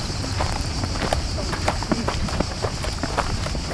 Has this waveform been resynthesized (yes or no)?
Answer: yes